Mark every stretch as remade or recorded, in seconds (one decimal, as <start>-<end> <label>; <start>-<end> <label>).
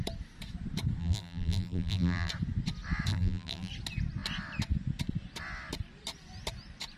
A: 0.0-1.0 recorded; 1.0-2.3 remade; 2.3-3.1 recorded; 3.1-3.7 remade; 3.7-7.0 recorded